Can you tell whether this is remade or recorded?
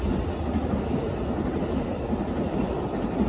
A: recorded